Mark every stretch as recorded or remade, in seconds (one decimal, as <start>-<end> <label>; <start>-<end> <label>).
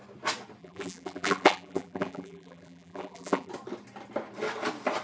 0.0-0.6 recorded; 0.6-3.5 remade; 3.5-5.0 recorded